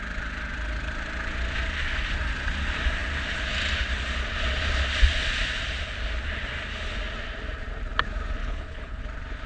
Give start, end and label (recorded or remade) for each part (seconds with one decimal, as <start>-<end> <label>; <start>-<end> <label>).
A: 0.0-8.4 recorded; 8.4-9.0 remade; 9.0-9.5 recorded